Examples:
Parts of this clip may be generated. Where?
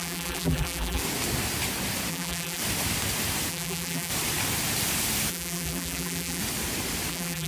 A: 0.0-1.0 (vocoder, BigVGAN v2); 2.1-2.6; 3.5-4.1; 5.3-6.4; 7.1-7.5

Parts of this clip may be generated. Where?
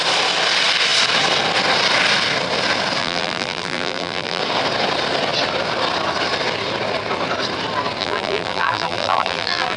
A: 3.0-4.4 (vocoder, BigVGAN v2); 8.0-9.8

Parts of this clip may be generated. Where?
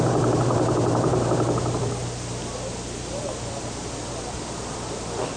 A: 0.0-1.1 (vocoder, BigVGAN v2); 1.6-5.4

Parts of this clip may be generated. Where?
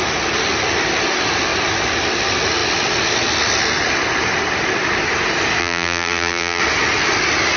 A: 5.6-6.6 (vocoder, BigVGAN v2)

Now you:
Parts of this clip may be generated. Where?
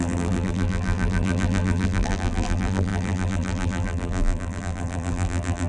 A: 0.0-5.7 (vocoder, BigVGAN v2)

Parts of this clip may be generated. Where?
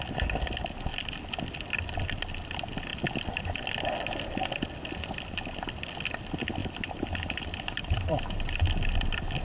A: 6.6-8.6 (vocoder, BigVGAN v2)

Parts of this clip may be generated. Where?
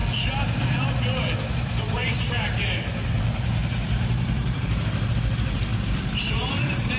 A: 1.5-7.0 (vocoder, BigVGAN v2)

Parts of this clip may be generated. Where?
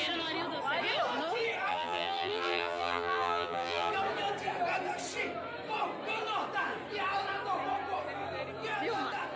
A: 1.7-3.9 (vocoder, BigVGAN v2)